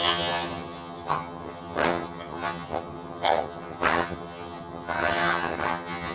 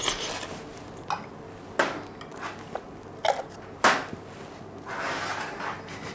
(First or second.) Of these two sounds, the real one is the second